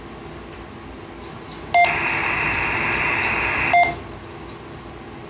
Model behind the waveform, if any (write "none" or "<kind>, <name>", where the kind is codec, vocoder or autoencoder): none